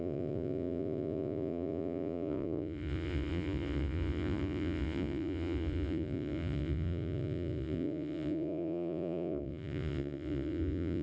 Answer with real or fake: fake